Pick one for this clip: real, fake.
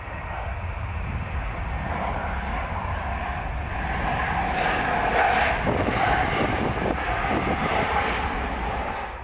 real